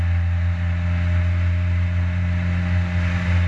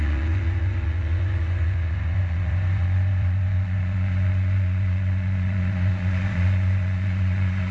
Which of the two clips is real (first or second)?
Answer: first